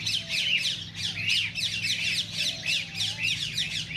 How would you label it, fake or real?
real